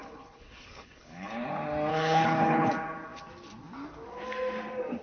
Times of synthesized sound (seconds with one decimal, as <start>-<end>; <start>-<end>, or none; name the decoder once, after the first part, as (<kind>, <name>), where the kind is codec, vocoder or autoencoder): 0.0-1.5 (codec, HILCodec); 1.9-2.7